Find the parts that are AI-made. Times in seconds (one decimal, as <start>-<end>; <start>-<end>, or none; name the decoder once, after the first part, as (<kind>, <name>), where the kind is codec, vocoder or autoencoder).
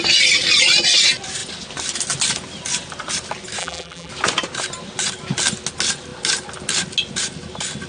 3.6-4.1 (vocoder, BigVGAN v2)